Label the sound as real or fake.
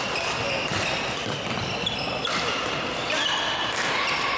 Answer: real